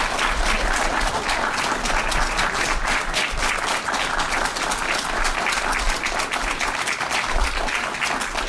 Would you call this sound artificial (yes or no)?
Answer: no